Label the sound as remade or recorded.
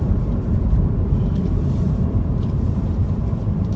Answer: remade